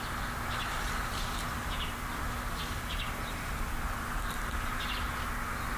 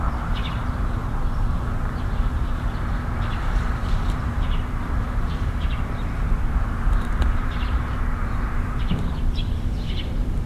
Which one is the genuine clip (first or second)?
first